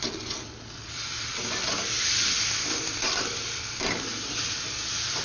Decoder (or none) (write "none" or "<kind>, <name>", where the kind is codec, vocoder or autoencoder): none